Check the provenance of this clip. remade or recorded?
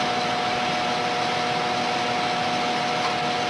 recorded